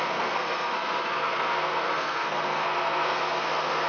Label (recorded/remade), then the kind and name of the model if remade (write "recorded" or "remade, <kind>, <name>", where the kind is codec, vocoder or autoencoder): remade, codec, SNAC